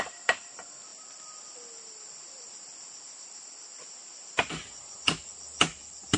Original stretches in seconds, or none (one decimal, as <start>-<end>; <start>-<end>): 0.0-6.2